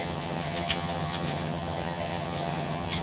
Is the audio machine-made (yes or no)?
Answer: yes